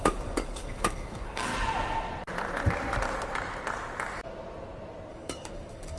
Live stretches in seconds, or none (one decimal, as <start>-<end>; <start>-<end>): 1.5-5.1